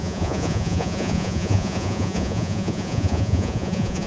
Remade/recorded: remade